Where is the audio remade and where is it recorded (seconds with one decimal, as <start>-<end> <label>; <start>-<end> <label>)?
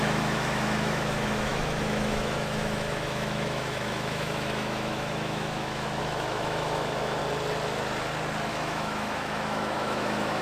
0.0-7.2 remade; 7.2-8.5 recorded; 8.5-10.4 remade